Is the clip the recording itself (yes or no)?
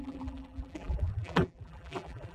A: no